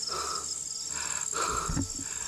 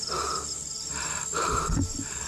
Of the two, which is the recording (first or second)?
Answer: first